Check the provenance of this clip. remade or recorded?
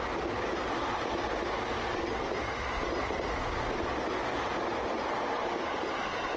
recorded